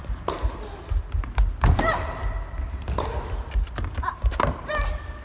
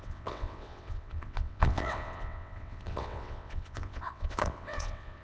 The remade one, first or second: second